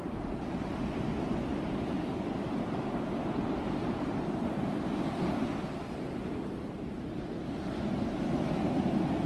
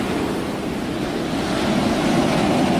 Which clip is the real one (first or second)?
second